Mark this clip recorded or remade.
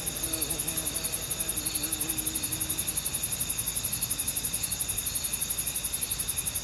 recorded